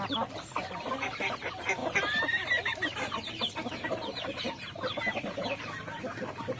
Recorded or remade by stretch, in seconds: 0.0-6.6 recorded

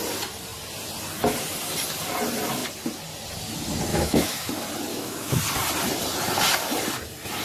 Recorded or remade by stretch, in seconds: 0.0-3.9 recorded; 3.9-4.5 remade; 4.5-4.9 recorded; 4.9-5.4 remade; 5.4-7.4 recorded

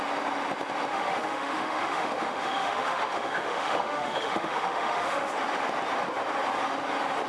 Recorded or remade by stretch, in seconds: 0.0-0.9 recorded; 0.9-5.3 remade; 5.3-7.3 recorded

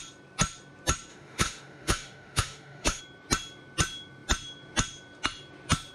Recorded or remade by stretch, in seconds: 0.0-1.1 recorded; 1.1-3.0 remade; 3.0-5.9 recorded

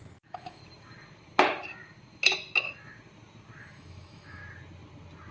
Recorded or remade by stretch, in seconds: 0.0-0.6 remade; 0.6-3.6 recorded; 3.6-4.4 remade; 4.4-5.3 recorded

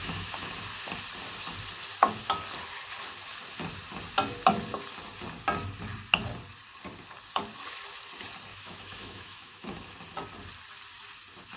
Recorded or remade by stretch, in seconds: 0.0-0.5 remade; 0.5-8.5 recorded; 8.5-9.9 remade; 9.9-11.6 recorded